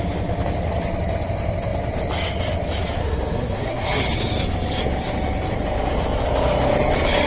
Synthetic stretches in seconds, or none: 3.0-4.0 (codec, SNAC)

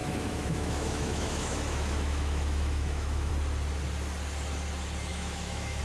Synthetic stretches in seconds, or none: 0.0-3.3 (autoencoder, DAC-VAE); 5.1-5.8